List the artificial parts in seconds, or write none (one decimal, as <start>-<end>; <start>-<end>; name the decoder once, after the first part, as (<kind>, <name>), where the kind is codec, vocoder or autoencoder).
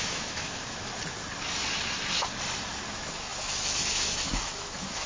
0.0-0.9 (autoencoder, DAC-VAE); 2.9-5.1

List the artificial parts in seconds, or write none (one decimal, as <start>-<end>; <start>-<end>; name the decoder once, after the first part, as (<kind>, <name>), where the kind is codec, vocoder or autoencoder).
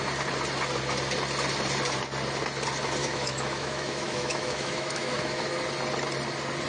3.0-5.6 (autoencoder, DAC-VAE)